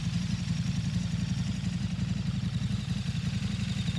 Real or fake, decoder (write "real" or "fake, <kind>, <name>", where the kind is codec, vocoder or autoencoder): fake, vocoder, BigVGAN v2